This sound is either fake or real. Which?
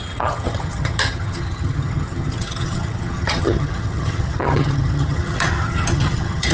fake